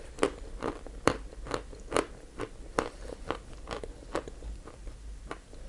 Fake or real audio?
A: fake